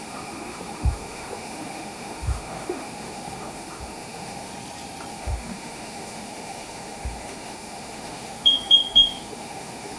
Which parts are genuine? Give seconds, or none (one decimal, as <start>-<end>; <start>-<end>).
4.5-5.1